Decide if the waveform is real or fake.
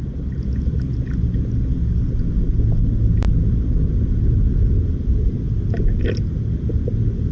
real